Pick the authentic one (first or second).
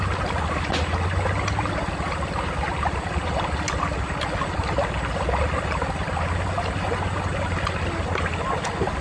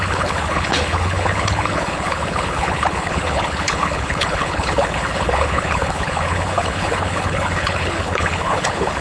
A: first